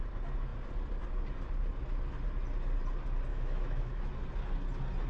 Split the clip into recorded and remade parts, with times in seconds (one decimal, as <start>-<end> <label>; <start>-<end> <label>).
0.0-3.3 recorded; 3.3-4.1 remade; 4.1-5.1 recorded